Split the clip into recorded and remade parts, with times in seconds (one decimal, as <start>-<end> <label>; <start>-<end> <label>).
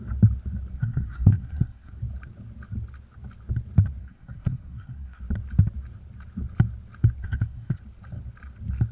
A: 0.0-0.7 recorded; 0.7-1.9 remade; 1.9-4.0 recorded; 4.0-5.2 remade; 5.2-7.2 recorded; 7.2-7.8 remade; 7.8-8.9 recorded